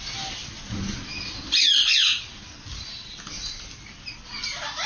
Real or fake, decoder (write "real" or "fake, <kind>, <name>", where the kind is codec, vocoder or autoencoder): real